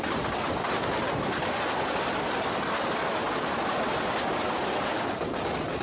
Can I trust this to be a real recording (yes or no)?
yes